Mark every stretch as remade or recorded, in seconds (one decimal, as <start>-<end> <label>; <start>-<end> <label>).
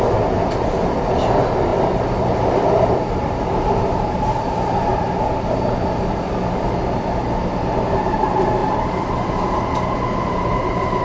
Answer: 0.0-1.7 recorded; 1.7-5.2 remade; 5.2-8.6 recorded; 8.6-9.5 remade; 9.5-11.0 recorded